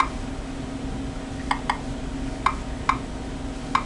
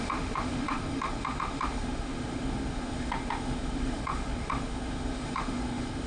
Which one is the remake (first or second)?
second